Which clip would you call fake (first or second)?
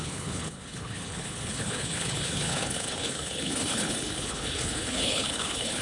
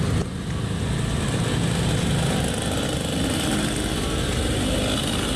first